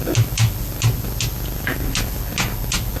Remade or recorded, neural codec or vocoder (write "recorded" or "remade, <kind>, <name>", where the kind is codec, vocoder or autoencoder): recorded